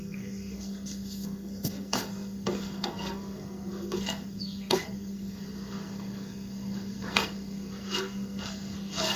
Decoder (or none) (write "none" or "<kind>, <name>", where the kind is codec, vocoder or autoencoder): codec, SNAC